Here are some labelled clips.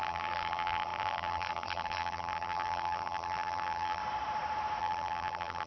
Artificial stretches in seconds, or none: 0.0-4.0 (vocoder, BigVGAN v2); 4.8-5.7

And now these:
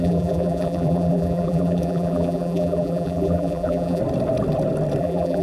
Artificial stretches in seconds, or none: 0.0-4.0 (vocoder, BigVGAN v2); 5.0-5.4

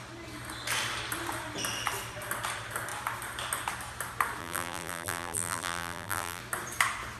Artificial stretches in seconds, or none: 4.4-6.4 (vocoder, BigVGAN v2)

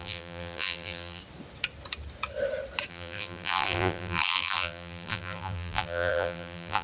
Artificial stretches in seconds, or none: 0.0-1.2 (vocoder, BigVGAN v2); 2.9-6.8

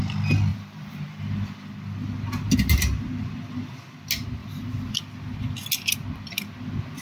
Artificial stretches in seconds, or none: 0.5-1.2 (vocoder, BigVGAN v2); 4.4-4.9

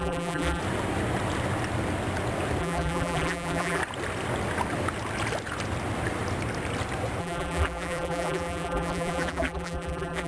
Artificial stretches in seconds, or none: 0.0-0.6 (vocoder, BigVGAN v2); 2.6-3.8; 7.2-10.3

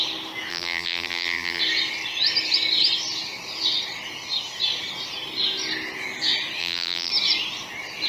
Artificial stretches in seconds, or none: 0.5-1.6 (vocoder, BigVGAN v2); 6.6-7.1

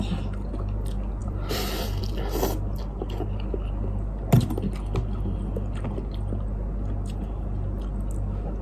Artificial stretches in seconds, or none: 1.2-2.0 (vocoder, BigVGAN v2)